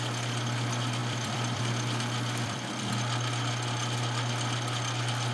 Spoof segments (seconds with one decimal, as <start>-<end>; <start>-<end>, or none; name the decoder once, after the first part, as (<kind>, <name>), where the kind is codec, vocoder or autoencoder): 1.0-2.9 (vocoder, BigVGAN v2)